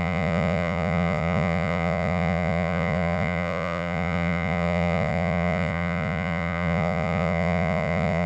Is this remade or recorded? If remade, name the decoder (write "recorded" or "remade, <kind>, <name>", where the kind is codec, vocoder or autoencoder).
remade, vocoder, Vocos